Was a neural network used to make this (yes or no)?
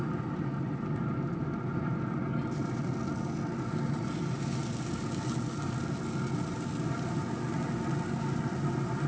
no